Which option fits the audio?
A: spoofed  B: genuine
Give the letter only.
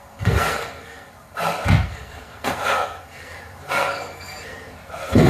A